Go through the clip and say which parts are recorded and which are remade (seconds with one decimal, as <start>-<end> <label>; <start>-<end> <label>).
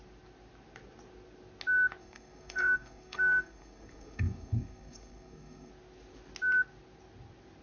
0.0-2.0 recorded; 2.0-5.7 remade; 5.7-7.6 recorded